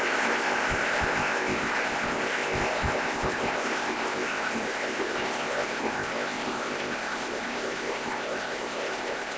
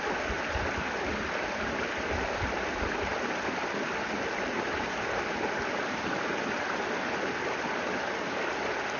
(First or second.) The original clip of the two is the second